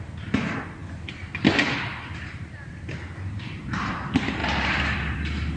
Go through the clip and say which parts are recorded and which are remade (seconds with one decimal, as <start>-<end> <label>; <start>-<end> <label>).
0.0-5.6 remade